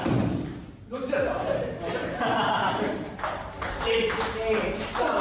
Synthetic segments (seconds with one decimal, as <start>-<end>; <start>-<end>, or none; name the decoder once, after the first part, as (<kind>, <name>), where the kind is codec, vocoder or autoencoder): 2.0-5.2 (vocoder, BigVGAN v2)